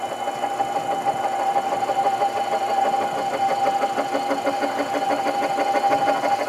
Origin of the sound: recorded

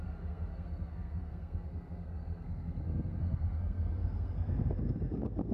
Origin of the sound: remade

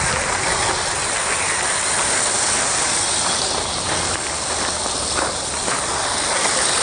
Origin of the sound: recorded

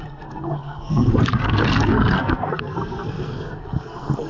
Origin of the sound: remade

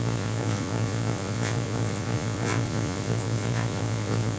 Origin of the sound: remade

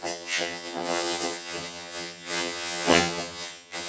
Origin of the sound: remade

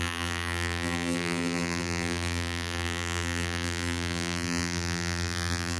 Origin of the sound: remade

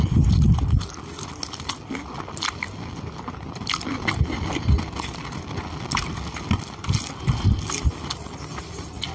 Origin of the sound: recorded